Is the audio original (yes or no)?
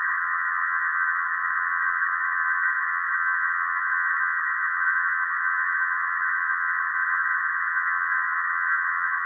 no